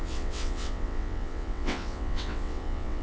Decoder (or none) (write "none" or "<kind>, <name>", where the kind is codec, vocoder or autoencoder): vocoder, WaveNeXt